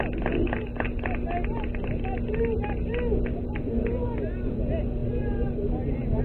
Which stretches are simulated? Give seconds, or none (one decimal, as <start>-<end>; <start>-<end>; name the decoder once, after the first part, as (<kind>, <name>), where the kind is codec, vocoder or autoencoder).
none